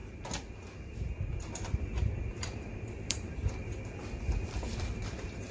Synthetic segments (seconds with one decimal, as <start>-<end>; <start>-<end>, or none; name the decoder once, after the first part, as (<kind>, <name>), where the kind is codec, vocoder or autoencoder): 1.3-3.4 (vocoder, BigVGAN v2); 4.7-5.5